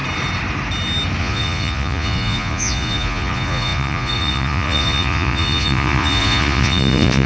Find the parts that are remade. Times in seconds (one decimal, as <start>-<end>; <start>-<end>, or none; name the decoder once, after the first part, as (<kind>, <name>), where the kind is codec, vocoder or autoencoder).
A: 1.2-7.3 (vocoder, Vocos)